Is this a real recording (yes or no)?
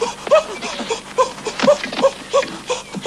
yes